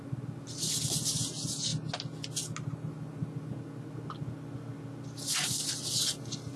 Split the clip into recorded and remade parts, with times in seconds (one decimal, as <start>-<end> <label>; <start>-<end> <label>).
0.0-6.6 recorded